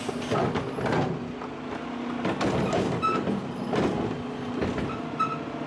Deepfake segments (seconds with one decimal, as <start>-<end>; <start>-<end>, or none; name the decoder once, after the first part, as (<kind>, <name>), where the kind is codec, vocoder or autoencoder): none